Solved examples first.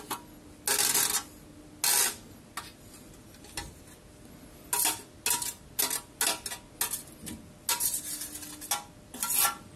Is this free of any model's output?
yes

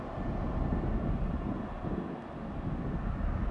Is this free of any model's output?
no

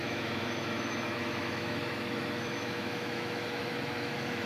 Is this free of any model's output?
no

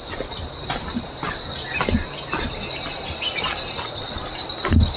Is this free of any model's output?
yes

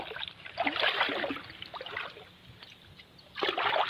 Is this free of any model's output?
yes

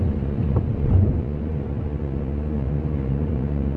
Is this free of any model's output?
no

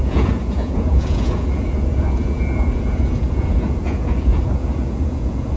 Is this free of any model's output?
no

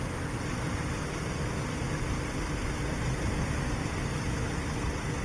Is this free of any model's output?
yes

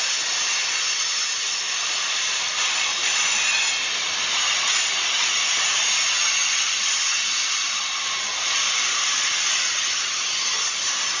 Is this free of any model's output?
yes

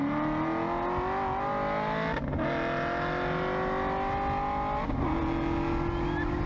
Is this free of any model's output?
yes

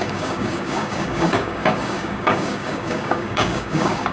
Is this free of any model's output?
no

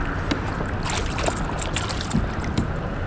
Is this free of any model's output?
yes